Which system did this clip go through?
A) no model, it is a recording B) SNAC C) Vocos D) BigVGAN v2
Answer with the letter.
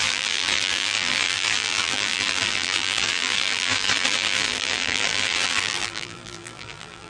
D